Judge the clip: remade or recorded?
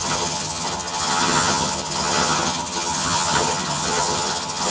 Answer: remade